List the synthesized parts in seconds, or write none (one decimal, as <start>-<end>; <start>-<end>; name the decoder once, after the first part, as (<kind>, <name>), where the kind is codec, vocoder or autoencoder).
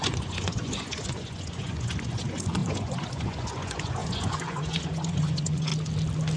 0.0-5.7 (vocoder, Vocos)